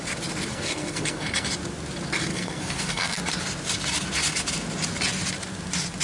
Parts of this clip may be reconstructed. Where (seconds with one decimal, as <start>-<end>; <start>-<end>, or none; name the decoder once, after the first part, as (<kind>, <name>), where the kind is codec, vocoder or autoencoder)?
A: 0.5-1.5 (codec, SNAC); 2.3-3.2